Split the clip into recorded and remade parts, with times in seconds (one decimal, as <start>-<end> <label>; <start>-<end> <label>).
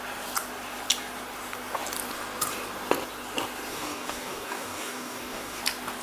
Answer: 0.0-3.7 recorded; 3.7-5.6 remade; 5.6-6.0 recorded